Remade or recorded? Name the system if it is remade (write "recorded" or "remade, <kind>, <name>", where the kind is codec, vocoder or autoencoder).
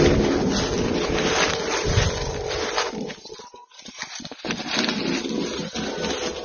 recorded